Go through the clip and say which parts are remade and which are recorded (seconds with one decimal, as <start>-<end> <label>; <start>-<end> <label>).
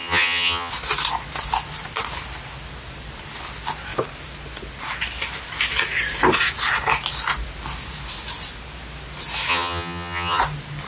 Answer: 0.0-0.7 remade; 0.7-9.5 recorded; 9.5-10.4 remade; 10.4-10.9 recorded